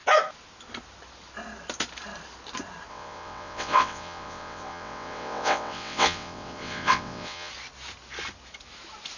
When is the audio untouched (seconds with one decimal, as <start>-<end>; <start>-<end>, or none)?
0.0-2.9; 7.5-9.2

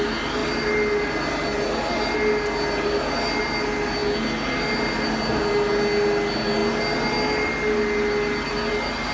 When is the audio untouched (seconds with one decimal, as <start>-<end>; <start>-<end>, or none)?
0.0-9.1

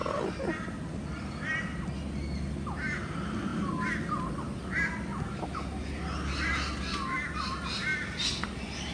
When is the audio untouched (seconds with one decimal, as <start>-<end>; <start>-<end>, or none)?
0.0-8.9

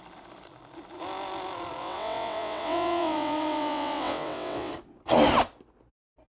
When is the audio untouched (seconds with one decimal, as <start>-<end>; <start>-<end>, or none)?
0.0-1.8; 4.7-6.4

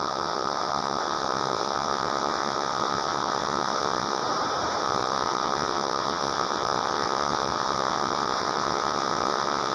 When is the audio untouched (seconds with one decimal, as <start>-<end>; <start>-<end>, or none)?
4.2-4.8

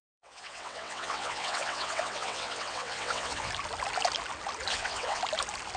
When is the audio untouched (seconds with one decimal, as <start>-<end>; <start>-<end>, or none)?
3.5-4.7; 5.2-5.8

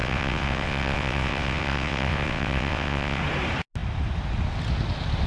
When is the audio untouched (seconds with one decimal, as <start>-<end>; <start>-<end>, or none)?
3.2-5.3